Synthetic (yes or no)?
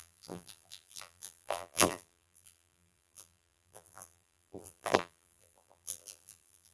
yes